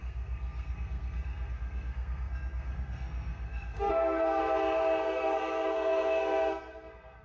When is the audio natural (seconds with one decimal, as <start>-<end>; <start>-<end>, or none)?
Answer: 4.4-5.0